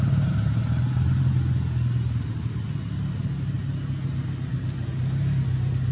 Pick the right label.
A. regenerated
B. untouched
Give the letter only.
B